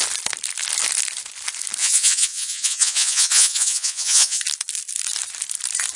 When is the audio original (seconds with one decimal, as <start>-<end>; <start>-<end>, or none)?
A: 0.0-1.8; 4.4-6.0